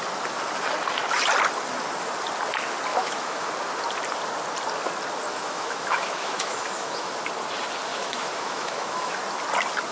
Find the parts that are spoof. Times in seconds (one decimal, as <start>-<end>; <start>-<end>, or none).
2.9-3.5; 5.3-7.1; 7.9-9.2